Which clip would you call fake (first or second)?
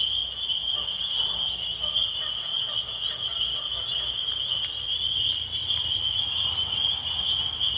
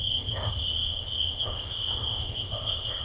second